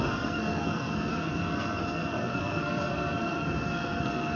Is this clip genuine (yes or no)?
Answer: no